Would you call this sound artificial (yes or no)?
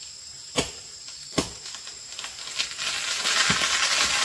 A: no